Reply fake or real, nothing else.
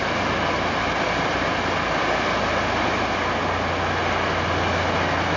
real